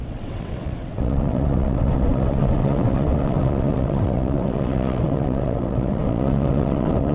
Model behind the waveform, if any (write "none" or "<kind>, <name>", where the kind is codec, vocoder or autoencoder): vocoder, WaveNeXt